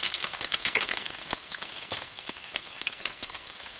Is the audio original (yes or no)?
no